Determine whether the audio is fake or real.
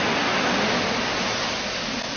real